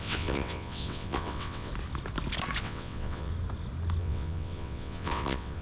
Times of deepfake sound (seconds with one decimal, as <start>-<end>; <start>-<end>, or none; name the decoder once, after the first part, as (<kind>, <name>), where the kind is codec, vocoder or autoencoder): 0.0-1.7 (vocoder, WaveNeXt); 2.6-3.3; 4.0-5.6